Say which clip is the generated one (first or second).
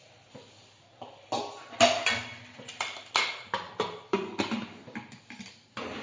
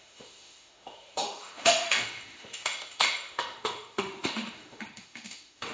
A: second